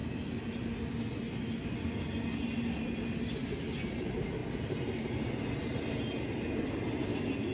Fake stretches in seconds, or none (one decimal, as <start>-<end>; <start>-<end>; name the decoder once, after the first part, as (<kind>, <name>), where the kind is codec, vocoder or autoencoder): none